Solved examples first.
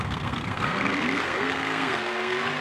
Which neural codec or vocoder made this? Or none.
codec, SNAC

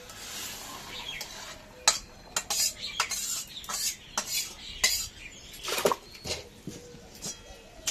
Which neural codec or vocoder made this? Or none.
none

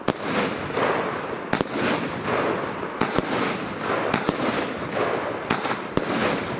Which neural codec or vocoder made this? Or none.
none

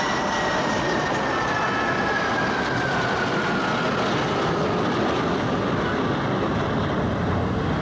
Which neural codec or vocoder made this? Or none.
none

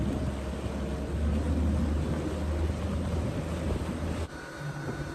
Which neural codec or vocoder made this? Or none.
none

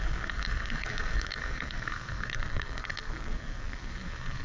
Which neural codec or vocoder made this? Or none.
codec, SNAC